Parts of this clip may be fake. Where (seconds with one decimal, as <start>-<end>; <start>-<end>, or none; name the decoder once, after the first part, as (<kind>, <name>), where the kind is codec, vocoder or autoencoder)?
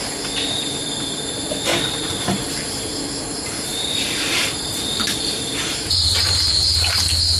1.7-2.6 (vocoder, BigVGAN v2); 3.7-6.5